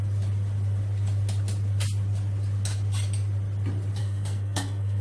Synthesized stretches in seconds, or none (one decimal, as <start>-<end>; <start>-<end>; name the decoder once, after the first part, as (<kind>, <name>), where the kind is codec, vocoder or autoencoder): 4.0-5.0 (codec, SNAC)